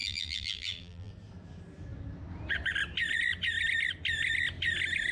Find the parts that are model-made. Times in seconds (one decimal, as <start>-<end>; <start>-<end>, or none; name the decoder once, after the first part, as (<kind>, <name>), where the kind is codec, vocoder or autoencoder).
0.0-1.1 (vocoder, BigVGAN v2)